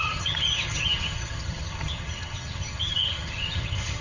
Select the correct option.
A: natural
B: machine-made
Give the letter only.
B